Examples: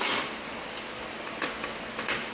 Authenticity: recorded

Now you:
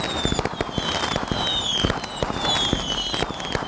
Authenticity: recorded